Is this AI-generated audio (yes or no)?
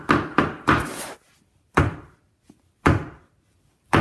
yes